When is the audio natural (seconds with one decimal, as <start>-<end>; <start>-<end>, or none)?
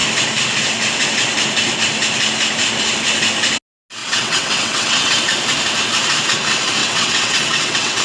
0.0-4.0; 5.2-6.8